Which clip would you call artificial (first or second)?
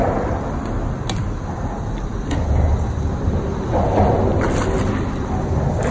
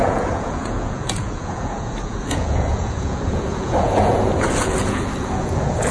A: second